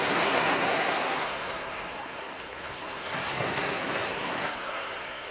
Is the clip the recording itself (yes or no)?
no